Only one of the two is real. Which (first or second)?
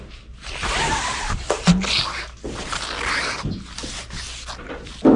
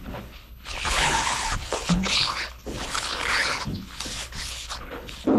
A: first